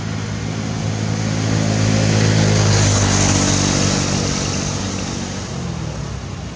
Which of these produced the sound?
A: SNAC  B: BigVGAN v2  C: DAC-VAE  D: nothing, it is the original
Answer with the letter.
D